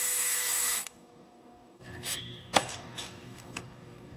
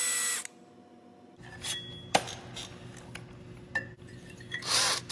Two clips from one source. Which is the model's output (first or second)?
first